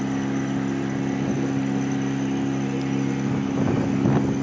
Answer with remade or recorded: recorded